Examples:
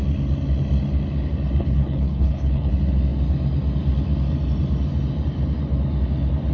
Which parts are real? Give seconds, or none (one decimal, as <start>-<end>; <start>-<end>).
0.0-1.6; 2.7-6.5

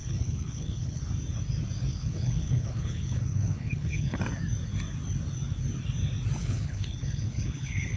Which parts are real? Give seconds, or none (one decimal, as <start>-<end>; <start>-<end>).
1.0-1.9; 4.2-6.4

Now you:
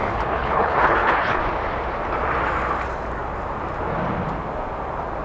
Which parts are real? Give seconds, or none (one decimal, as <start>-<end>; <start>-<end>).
1.4-5.2

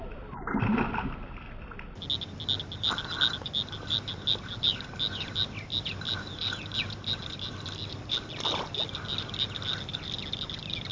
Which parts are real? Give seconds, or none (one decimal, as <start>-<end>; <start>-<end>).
0.0-10.9

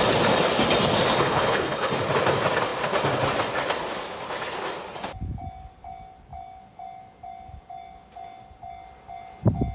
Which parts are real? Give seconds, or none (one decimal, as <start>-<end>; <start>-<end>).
0.0-1.2; 1.9-9.7

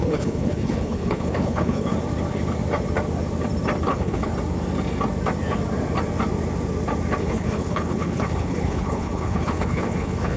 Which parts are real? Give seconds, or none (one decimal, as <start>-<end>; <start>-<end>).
1.9-3.9; 4.3-7.2